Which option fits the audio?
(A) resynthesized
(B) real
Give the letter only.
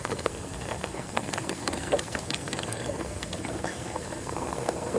A